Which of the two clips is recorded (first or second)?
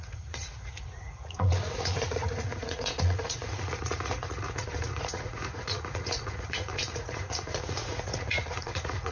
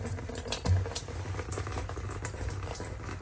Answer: second